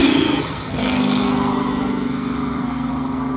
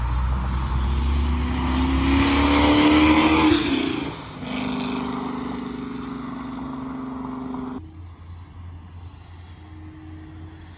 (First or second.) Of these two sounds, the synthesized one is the first